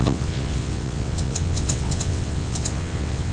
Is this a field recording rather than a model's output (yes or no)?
no